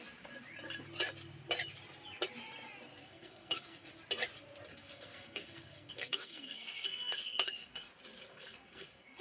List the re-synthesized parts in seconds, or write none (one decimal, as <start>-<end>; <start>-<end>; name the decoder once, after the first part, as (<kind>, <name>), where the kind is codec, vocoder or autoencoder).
3.0-3.9 (codec, SNAC); 4.7-7.9; 8.3-9.2